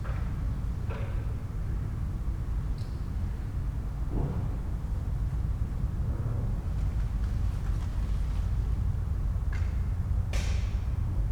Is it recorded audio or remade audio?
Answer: recorded